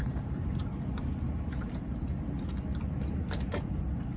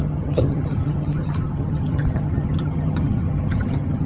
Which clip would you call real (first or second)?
first